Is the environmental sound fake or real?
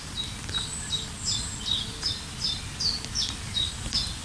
real